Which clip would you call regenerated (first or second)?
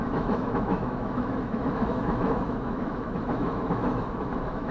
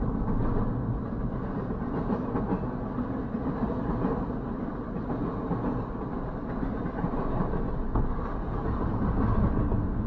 first